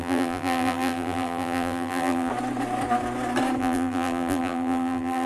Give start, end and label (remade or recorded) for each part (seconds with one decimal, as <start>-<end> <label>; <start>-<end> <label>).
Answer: 0.0-2.3 remade; 2.3-3.6 recorded; 3.6-5.3 remade